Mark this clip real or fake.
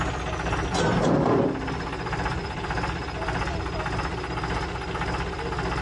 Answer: real